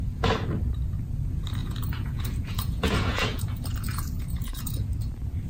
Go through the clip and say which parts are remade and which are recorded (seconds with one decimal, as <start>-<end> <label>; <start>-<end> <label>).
0.0-1.6 recorded; 1.6-4.9 remade; 4.9-5.5 recorded